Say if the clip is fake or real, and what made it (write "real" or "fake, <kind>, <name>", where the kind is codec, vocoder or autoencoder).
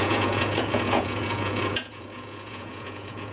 fake, vocoder, Vocos